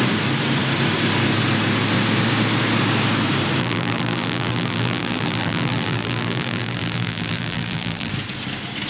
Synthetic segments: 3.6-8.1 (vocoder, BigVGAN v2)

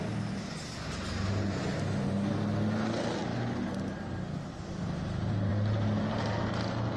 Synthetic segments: none

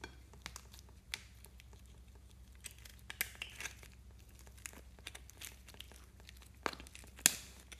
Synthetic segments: none

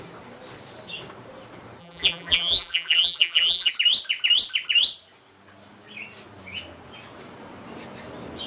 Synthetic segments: 1.8-3.7 (vocoder, BigVGAN v2)

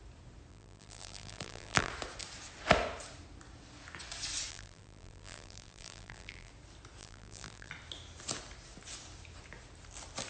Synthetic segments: 0.5-1.9 (vocoder, BigVGAN v2); 4.5-6.5; 7.0-7.7

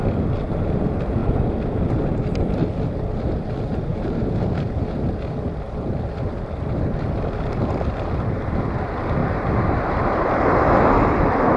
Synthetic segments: 3.9-4.5 (vocoder, BigVGAN v2); 9.2-9.9